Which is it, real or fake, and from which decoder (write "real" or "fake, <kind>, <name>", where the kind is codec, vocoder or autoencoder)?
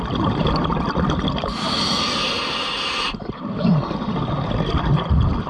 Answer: real